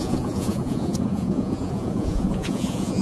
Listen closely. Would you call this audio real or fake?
fake